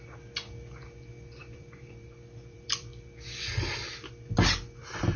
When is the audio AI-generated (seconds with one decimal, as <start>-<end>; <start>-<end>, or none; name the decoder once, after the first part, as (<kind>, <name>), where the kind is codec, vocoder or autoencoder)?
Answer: 1.4-4.1 (vocoder, BigVGAN v2)